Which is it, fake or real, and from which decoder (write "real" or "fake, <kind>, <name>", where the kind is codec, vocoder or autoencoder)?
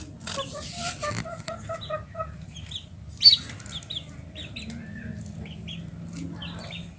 real